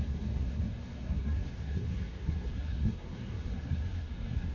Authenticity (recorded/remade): remade